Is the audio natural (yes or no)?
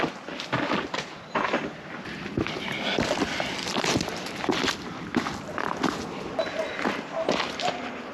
yes